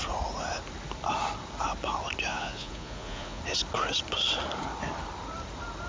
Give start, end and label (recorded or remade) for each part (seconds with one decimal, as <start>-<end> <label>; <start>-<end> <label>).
0.0-2.3 recorded; 2.3-3.4 remade; 3.4-5.9 recorded